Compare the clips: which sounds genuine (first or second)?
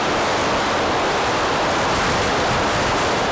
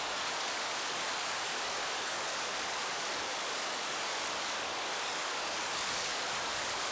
first